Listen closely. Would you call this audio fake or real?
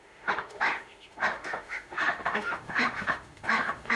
fake